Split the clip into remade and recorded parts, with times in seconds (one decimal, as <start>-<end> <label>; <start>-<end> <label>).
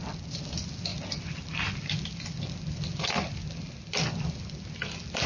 0.0-5.3 recorded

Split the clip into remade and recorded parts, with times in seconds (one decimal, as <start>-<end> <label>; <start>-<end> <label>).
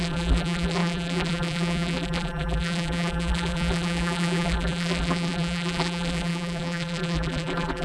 0.0-7.8 remade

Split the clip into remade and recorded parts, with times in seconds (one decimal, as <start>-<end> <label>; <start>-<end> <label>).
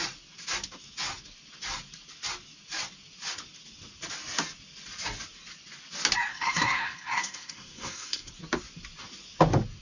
0.0-6.3 recorded; 6.3-8.3 remade; 8.3-9.8 recorded